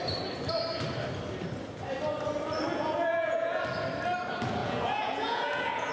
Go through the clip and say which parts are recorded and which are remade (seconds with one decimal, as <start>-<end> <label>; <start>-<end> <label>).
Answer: 0.0-2.7 recorded; 2.7-3.6 remade; 3.6-4.6 recorded; 4.6-5.9 remade